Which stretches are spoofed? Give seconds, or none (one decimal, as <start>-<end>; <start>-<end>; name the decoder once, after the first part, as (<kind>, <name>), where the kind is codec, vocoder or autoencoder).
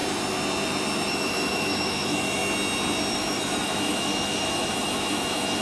1.1-2.4 (autoencoder, DAC-VAE); 3.1-5.6